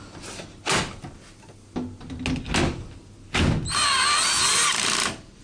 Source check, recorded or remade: recorded